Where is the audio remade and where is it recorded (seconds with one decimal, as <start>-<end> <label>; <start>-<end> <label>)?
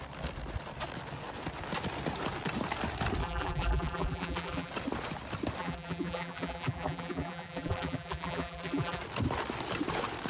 0.0-3.2 recorded; 3.2-4.7 remade; 4.7-5.6 recorded; 5.6-9.0 remade; 9.0-10.3 recorded